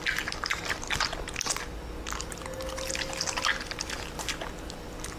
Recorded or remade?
recorded